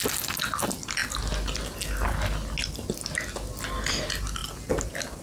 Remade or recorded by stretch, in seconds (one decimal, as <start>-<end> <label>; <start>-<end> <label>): 0.0-5.2 recorded